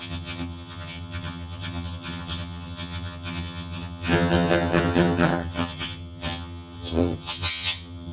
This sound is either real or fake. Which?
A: fake